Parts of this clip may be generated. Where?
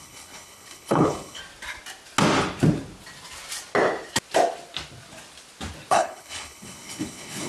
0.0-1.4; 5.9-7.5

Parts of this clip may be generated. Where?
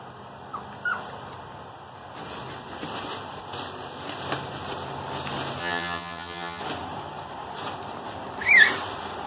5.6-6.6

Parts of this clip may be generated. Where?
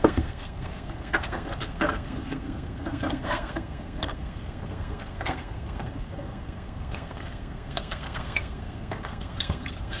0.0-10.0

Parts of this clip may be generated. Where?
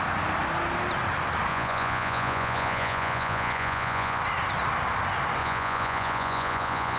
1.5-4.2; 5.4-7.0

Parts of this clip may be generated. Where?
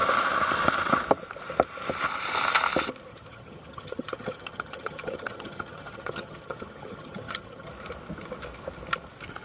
3.1-7.7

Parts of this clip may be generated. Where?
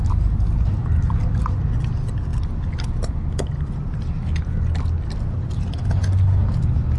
none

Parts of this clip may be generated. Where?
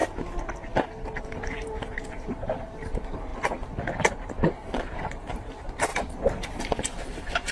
1.2-3.3; 4.1-5.9; 6.8-7.5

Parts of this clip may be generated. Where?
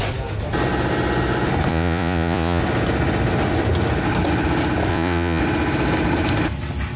1.7-2.6; 4.9-5.4